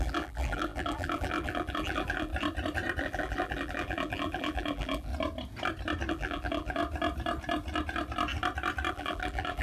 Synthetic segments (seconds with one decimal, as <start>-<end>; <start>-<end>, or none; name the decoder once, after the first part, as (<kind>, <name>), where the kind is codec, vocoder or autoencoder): 0.0-2.3 (vocoder, BigVGAN v2); 3.0-5.1; 6.1-6.8; 8.9-9.6